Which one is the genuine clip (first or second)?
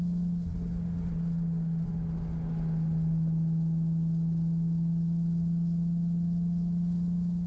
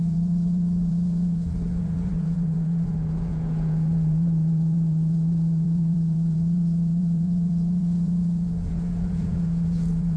first